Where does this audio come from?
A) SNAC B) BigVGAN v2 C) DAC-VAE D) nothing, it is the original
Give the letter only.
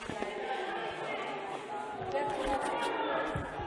D